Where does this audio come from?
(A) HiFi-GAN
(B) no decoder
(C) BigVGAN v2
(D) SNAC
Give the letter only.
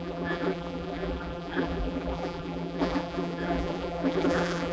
C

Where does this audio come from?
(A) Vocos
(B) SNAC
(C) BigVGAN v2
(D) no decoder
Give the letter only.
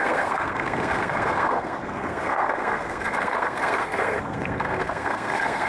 B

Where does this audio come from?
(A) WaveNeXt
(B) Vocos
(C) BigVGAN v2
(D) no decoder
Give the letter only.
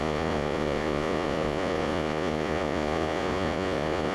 B